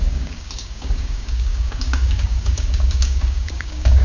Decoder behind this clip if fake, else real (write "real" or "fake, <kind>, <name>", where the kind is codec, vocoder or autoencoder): fake, codec, DAC